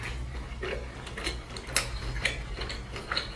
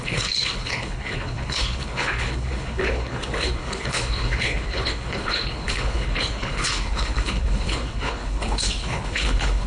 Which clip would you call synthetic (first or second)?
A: second